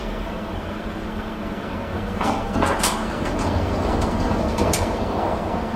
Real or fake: fake